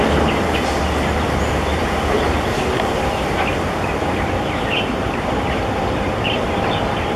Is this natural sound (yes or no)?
no